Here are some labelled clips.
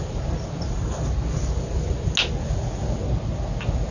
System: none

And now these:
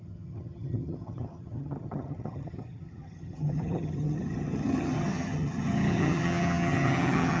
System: vocoder, HiFi-GAN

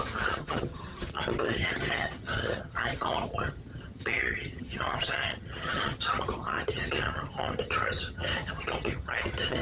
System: vocoder, HiFi-GAN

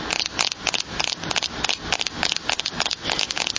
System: none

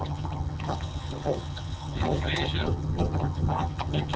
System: vocoder, HiFi-GAN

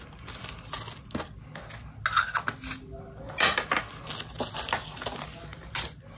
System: none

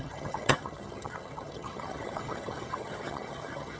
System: vocoder, HiFi-GAN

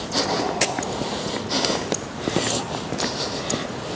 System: none